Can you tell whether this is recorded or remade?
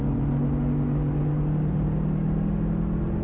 recorded